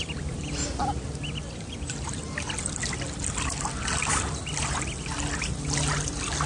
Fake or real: real